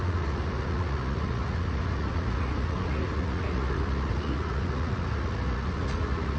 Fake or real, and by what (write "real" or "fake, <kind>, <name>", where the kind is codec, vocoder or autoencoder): fake, vocoder, Vocos